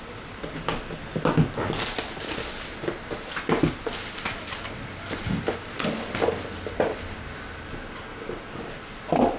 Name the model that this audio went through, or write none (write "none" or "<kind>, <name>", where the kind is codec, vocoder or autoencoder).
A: none